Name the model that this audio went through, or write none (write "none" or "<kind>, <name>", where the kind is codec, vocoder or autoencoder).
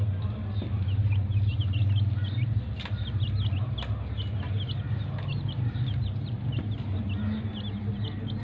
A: none